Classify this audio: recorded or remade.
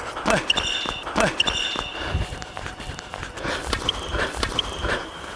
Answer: remade